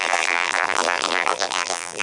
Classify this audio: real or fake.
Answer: fake